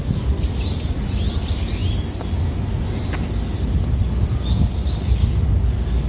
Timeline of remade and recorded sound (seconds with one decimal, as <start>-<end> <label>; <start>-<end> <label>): 0.0-6.1 recorded